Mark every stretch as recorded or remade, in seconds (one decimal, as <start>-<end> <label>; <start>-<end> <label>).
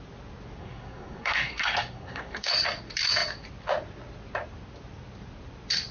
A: 0.0-0.6 recorded; 0.6-2.5 remade; 2.5-5.9 recorded